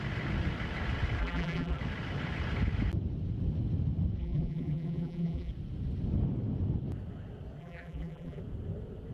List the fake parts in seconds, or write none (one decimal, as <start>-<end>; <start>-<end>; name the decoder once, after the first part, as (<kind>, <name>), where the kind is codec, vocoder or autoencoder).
1.2-1.8 (vocoder, BigVGAN v2); 4.2-5.5; 7.6-8.4